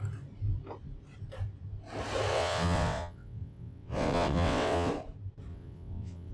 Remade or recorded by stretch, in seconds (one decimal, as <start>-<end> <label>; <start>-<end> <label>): 0.0-2.3 recorded; 2.3-4.9 remade; 4.9-5.5 recorded; 5.5-6.3 remade